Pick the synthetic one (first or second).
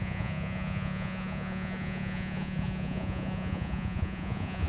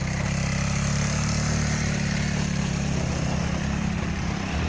first